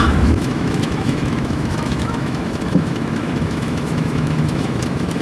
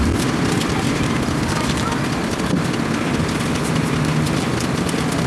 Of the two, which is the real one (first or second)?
second